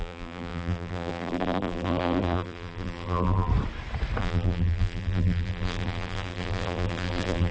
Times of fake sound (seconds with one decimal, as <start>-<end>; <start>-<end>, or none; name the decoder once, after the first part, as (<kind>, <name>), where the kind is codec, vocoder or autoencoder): 0.0-3.5 (vocoder, BigVGAN v2); 4.2-7.5